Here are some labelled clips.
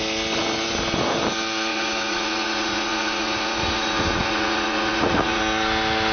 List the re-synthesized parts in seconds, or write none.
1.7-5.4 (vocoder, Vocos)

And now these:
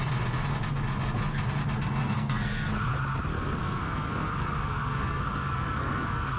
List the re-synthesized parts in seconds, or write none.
2.0-2.7 (codec, SNAC); 3.3-6.4

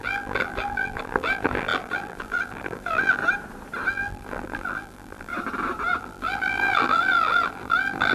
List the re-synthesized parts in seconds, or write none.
0.0-3.2 (vocoder, BigVGAN v2); 3.9-5.3; 6.0-8.1

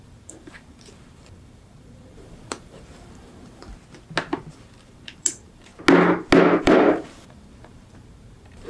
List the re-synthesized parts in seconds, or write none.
0.0-3.7 (vocoder, BigVGAN v2); 4.5-5.7; 6.6-8.7

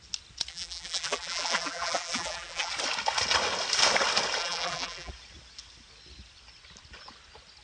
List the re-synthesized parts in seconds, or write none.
0.5-2.7 (vocoder, BigVGAN v2); 4.4-5.1

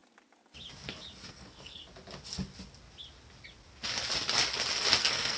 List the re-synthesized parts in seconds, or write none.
1.3-1.8 (codec, SNAC); 5.0-5.4